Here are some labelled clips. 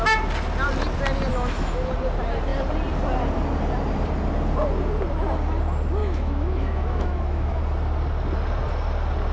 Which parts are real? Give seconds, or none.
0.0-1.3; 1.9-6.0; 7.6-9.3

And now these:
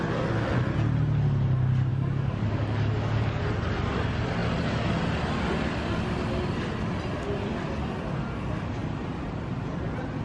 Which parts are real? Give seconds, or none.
0.0-1.9; 3.4-10.2

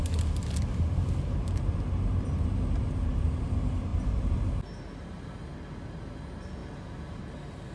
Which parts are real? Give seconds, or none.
0.0-7.7